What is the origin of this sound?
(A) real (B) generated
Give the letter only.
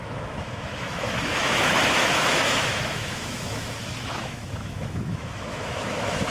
B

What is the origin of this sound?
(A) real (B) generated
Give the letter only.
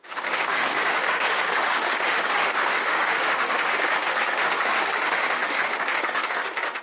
B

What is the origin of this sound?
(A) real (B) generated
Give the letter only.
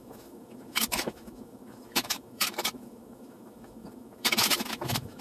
B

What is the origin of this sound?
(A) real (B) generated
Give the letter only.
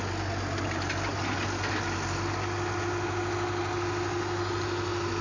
A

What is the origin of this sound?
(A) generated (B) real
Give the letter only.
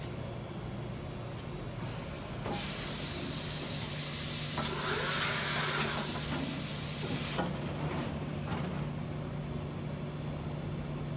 B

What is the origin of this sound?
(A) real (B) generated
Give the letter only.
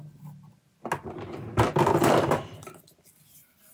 A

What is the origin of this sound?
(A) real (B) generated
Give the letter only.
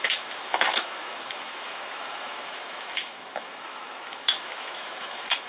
B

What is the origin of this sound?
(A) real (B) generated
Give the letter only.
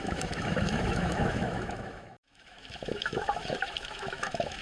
B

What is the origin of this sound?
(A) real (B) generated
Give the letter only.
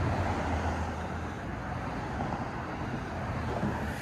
A